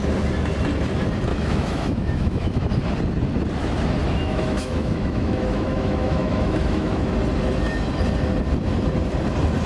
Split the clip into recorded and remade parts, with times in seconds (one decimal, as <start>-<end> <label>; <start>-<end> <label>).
0.0-1.3 recorded; 1.3-2.7 remade; 2.7-4.0 recorded; 4.0-7.0 remade; 7.0-9.7 recorded